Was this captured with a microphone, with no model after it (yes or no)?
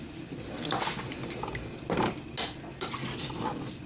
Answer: yes